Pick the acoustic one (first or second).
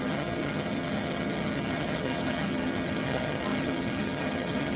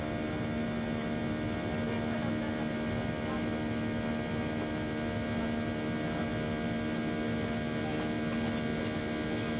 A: second